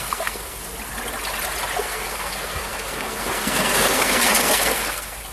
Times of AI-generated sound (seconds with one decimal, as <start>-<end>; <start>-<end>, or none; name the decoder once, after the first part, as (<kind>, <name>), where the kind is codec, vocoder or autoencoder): 0.0-0.6 (codec, SNAC); 1.8-5.3